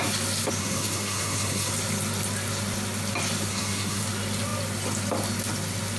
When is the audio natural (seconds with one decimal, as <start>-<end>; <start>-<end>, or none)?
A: 0.0-0.6; 1.7-3.5; 4.0-6.0